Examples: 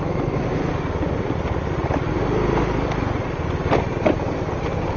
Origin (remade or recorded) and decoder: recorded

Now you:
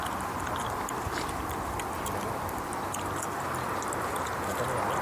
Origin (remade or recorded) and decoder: recorded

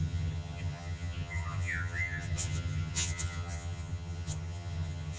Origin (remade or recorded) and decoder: remade, vocoder, HiFi-GAN